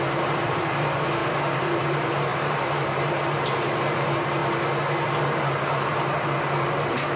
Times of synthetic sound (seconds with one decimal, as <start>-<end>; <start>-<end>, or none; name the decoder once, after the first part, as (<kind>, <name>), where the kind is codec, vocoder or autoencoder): 0.0-4.4 (vocoder, BigVGAN v2); 5.1-7.2